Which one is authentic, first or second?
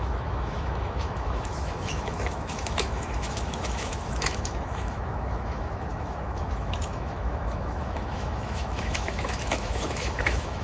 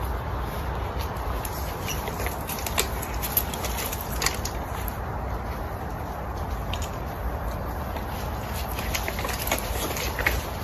second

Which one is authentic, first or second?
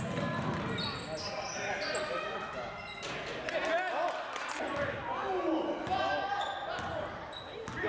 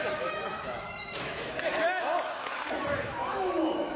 first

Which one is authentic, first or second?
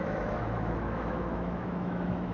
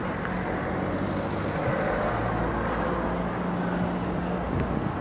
second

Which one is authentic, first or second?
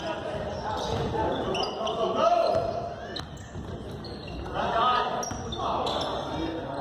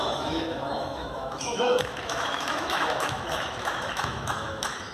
first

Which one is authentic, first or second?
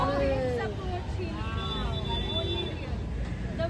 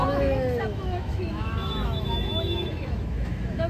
first